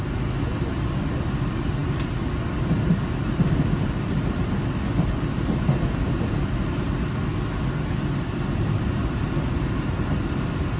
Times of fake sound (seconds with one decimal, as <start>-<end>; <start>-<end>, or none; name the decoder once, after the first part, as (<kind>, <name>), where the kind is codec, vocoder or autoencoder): none

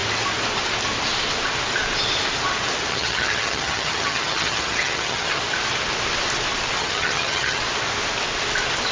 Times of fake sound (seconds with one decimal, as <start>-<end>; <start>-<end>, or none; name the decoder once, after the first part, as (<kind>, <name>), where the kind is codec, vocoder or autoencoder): 2.9-5.4 (vocoder, HiFi-GAN); 6.8-7.6